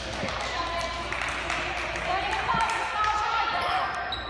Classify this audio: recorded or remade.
recorded